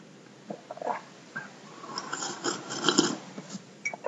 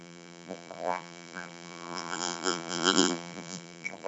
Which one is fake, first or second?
second